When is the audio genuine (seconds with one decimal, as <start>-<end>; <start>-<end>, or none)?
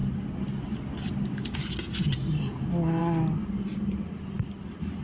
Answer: 0.0-5.0